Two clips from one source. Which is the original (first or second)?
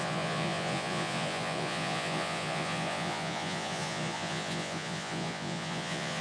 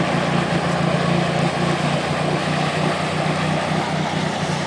second